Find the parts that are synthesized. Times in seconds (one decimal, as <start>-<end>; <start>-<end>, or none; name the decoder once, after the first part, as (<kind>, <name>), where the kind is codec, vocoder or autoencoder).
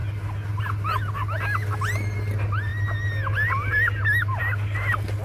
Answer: none